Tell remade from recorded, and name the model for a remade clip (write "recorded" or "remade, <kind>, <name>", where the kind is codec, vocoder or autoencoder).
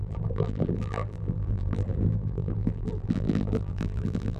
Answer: remade, vocoder, BigVGAN v2